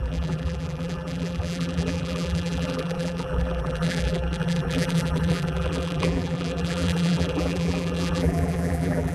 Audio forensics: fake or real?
fake